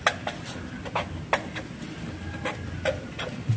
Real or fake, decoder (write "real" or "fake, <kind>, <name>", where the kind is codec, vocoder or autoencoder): real